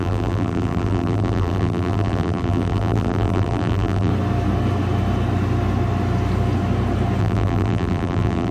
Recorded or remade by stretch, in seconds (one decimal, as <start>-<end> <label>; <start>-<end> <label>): 0.0-4.1 remade; 4.1-7.2 recorded; 7.2-8.5 remade